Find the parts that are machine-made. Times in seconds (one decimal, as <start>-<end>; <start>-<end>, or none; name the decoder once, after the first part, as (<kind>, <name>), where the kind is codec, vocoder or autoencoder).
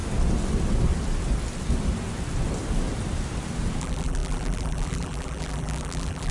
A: 3.8-6.3 (vocoder, BigVGAN v2)